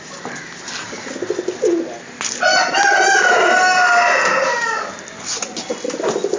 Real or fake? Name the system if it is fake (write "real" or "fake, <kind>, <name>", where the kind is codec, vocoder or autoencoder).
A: real